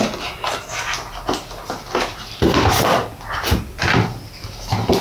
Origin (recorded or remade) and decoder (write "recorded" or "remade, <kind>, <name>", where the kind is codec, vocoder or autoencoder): recorded